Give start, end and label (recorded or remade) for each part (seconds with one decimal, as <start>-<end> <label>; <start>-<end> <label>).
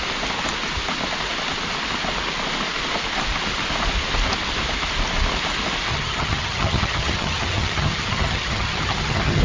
0.0-5.9 recorded; 5.9-9.4 remade